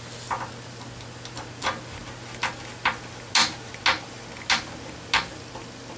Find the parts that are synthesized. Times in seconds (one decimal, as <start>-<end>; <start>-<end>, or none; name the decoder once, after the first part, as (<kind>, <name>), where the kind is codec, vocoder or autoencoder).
none